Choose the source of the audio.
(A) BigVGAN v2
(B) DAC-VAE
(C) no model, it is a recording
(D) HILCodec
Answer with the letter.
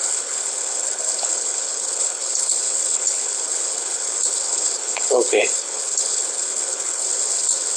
D